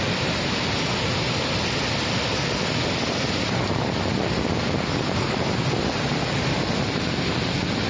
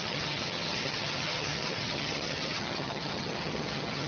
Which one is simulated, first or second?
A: second